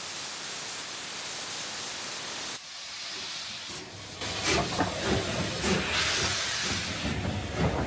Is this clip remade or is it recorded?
recorded